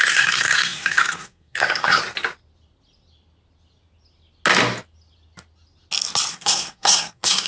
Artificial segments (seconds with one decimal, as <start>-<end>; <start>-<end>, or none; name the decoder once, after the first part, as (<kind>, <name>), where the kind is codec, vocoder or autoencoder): 0.0-2.0 (codec, SNAC); 6.3-7.5